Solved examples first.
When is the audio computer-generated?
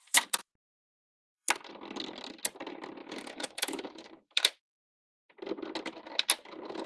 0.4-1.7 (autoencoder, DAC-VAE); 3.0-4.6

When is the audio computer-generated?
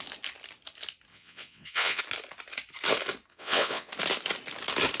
1.1-2.0 (vocoder, WaveNeXt); 3.3-3.9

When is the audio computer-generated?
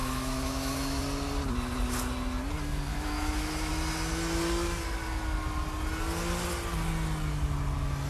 0.0-1.0 (autoencoder, DAC-VAE); 2.9-3.7